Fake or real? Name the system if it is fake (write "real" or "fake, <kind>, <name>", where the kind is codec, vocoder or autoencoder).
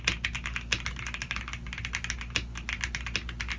real